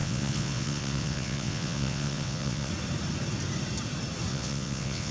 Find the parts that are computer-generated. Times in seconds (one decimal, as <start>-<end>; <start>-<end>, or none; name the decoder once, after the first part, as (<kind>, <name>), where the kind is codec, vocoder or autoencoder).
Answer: 0.0-2.7 (vocoder, WaveNeXt); 4.3-5.1

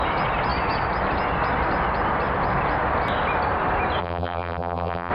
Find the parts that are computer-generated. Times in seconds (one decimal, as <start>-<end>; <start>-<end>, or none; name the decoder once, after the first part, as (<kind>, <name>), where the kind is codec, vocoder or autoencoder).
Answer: 4.0-5.1 (vocoder, BigVGAN v2)

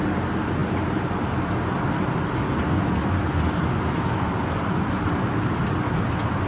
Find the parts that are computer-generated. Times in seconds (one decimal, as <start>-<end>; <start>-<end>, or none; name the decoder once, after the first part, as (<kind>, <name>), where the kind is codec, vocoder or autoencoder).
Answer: none

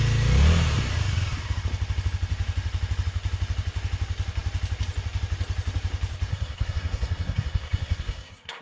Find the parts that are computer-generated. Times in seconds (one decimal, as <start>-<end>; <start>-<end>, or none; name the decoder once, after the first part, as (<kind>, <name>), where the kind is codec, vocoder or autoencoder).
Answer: 6.3-8.6 (codec, SNAC)

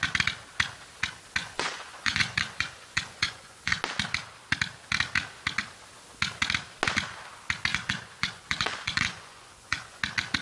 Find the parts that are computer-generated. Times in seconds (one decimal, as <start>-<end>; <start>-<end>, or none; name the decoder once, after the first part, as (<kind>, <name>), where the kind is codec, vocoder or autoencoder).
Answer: 1.4-3.8 (vocoder, Vocos); 7.7-10.0

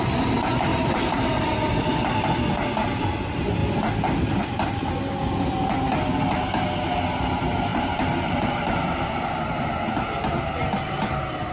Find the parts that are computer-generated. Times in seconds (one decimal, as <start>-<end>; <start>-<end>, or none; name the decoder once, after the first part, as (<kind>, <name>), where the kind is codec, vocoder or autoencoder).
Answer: 0.7-1.7 (vocoder, BigVGAN v2); 7.7-9.4